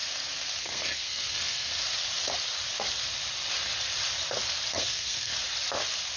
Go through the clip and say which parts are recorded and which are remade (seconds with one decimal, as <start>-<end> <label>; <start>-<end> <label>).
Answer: 0.0-0.6 recorded; 0.6-1.7 remade; 1.7-4.8 recorded; 4.8-5.3 remade; 5.3-6.2 recorded